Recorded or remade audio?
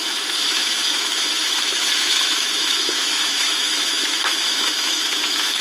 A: remade